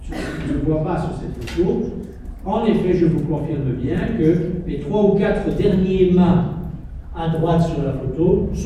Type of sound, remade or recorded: recorded